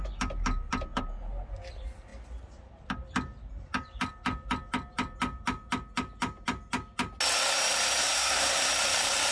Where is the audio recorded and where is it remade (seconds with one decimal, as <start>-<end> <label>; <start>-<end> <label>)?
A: 0.0-8.0 recorded; 8.0-8.7 remade; 8.7-9.3 recorded